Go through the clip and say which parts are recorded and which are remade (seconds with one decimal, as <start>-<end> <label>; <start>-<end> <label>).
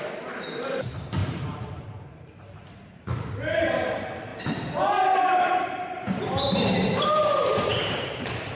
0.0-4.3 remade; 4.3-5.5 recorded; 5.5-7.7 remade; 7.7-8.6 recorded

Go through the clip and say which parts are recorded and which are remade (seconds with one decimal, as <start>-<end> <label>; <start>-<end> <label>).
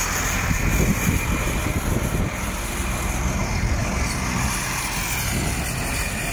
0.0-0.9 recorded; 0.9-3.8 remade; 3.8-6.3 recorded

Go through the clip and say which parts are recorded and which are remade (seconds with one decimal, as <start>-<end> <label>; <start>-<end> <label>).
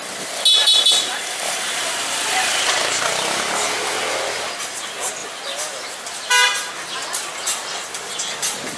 0.0-0.6 recorded; 0.6-2.6 remade; 2.6-8.8 recorded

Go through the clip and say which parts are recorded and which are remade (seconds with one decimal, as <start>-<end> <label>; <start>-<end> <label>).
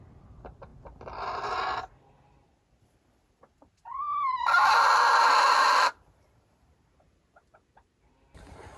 0.0-8.8 recorded